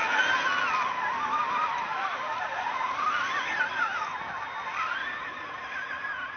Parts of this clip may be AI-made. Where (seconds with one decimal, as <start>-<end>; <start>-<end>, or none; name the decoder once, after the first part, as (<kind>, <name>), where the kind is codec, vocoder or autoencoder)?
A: none